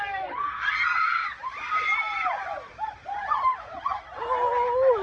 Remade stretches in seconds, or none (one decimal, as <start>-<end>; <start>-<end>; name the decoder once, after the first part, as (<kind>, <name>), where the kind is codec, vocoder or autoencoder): 1.2-2.4 (vocoder, BigVGAN v2); 3.5-4.2